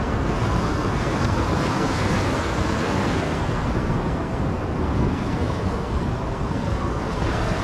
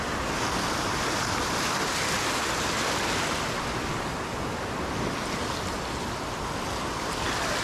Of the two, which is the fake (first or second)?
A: first